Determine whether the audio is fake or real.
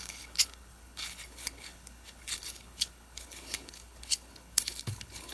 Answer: fake